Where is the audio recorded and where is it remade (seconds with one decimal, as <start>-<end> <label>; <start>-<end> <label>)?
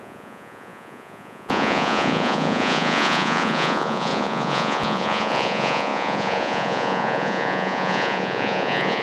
0.0-9.0 remade